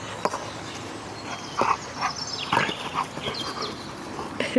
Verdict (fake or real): real